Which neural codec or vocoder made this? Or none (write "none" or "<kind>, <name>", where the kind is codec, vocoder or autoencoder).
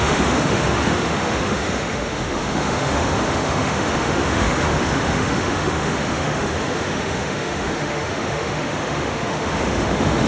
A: autoencoder, DAC-VAE